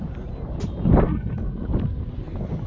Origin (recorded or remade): recorded